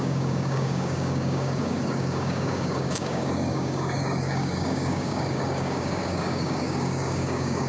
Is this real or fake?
fake